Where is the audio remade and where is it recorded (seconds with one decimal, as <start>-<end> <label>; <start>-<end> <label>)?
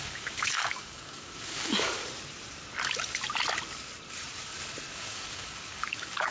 0.0-2.0 remade; 2.0-4.9 recorded; 4.9-6.3 remade